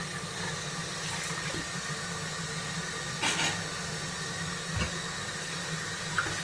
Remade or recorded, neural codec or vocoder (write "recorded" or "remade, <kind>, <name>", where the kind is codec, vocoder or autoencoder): recorded